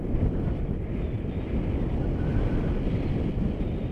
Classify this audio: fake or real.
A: real